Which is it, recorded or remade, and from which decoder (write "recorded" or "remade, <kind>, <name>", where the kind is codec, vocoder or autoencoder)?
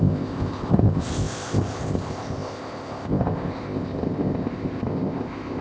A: remade, codec, ZipCodec